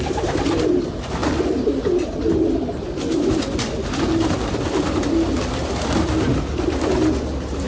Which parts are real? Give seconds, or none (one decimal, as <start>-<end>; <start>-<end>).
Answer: 0.0-7.7